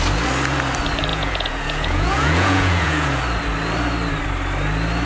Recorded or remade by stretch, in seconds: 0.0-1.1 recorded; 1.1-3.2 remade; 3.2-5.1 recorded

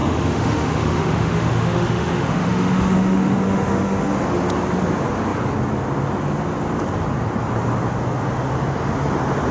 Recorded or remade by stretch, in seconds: 0.0-4.2 remade; 4.2-9.5 recorded

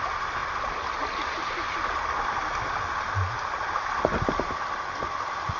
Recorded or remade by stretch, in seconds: 0.0-5.6 recorded

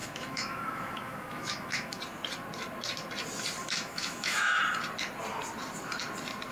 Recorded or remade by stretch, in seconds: 0.0-2.0 remade; 2.0-3.6 recorded; 3.6-4.6 remade; 4.6-6.5 recorded

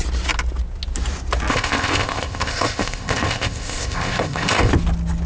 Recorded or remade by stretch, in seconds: 0.0-1.5 recorded; 1.5-4.7 remade; 4.7-5.3 recorded

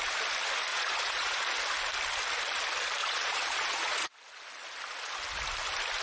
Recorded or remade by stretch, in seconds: 0.0-0.7 recorded; 0.7-1.4 remade; 1.4-3.0 recorded; 3.0-4.1 remade; 4.1-6.0 recorded

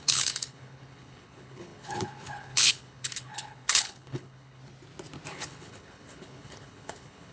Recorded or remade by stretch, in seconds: 0.0-4.6 remade; 4.6-5.3 recorded; 5.3-7.3 remade